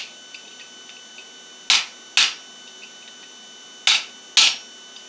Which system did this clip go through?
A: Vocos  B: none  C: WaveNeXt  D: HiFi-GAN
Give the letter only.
B